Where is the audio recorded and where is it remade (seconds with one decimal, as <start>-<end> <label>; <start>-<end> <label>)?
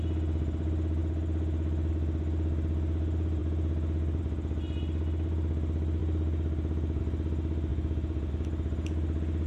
0.0-7.7 recorded; 7.7-8.3 remade; 8.3-9.5 recorded